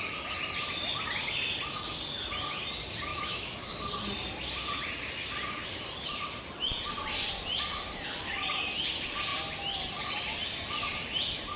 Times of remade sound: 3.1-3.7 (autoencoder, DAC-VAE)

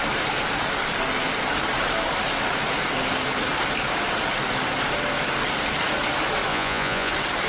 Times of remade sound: 6.5-7.1 (vocoder, Vocos)

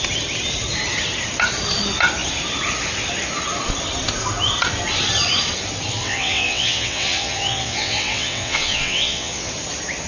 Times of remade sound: 6.0-9.5 (vocoder, WaveNeXt)

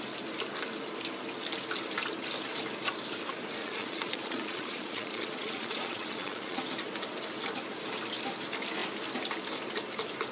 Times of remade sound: 3.6-6.6 (vocoder, Vocos)

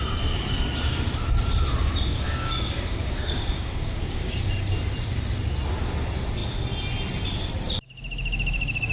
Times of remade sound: 2.1-4.3 (codec, DAC)

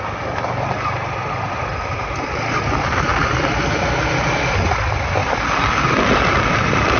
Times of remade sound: none